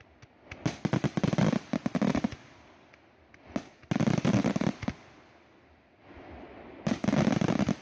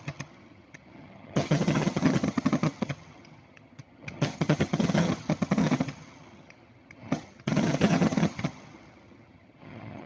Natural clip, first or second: first